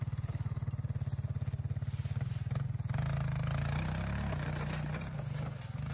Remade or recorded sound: recorded